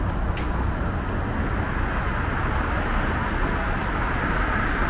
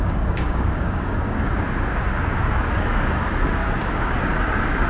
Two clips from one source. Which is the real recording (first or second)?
first